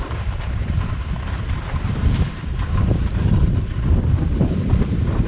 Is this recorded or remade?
remade